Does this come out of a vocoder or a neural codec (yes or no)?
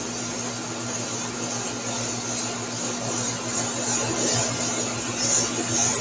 no